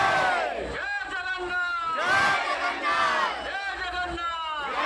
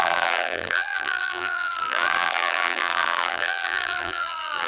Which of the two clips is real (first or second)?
first